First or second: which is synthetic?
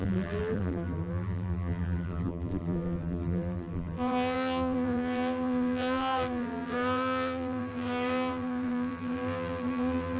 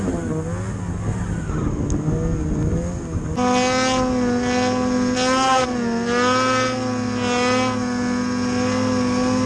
first